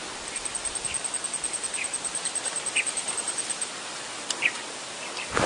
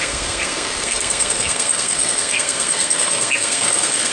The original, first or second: first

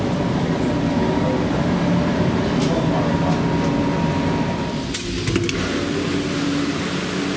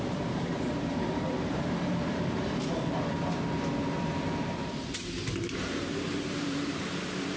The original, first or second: first